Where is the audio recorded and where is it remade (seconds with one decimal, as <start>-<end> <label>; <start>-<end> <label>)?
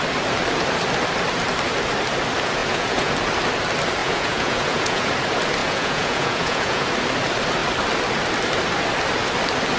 0.0-2.6 recorded; 2.6-3.1 remade; 3.1-4.0 recorded; 4.0-5.1 remade; 5.1-5.6 recorded; 5.6-6.9 remade; 6.9-9.8 recorded